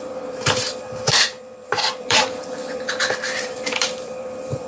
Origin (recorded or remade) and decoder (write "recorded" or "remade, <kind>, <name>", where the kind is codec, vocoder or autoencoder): remade, vocoder, BigVGAN v2